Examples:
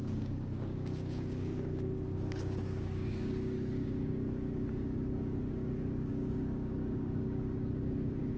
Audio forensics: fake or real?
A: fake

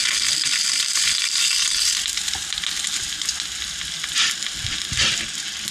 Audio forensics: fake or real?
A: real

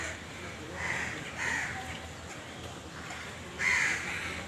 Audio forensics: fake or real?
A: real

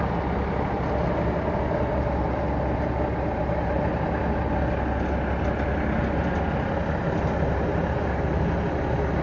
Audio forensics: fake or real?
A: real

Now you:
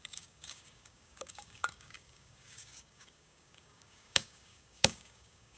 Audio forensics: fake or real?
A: fake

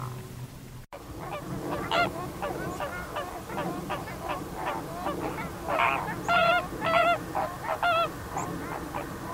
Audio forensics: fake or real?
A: real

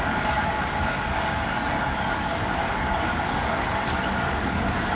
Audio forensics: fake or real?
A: fake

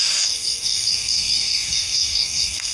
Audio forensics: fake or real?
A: fake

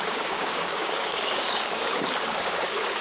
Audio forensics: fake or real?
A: fake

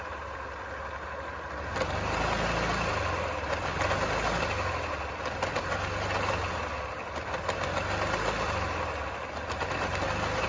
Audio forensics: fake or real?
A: real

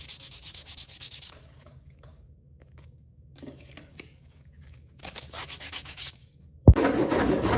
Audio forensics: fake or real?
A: fake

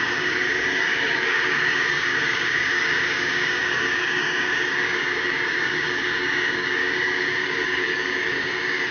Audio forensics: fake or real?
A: fake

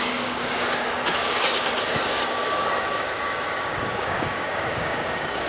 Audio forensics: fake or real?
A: fake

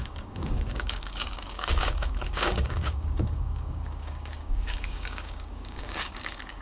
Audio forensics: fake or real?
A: fake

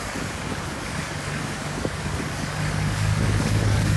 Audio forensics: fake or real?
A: fake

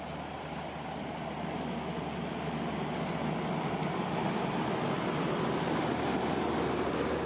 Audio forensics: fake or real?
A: real